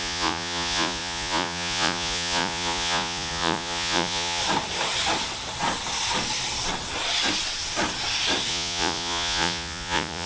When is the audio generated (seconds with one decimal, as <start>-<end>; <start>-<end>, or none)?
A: 0.0-4.4; 8.5-10.3